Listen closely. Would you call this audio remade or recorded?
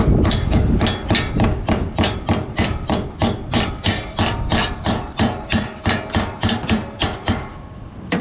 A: remade